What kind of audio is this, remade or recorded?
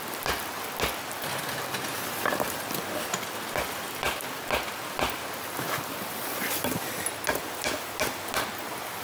recorded